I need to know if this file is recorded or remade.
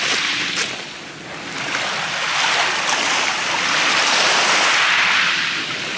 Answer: recorded